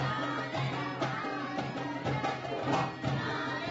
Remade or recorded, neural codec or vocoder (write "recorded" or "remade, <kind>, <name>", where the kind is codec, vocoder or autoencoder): recorded